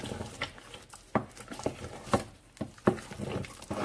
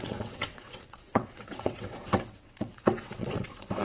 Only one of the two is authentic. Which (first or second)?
first